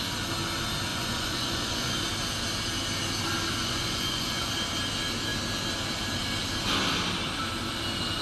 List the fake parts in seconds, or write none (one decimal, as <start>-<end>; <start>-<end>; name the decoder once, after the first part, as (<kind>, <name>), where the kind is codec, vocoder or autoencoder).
0.9-2.0 (vocoder, Vocos); 3.6-4.5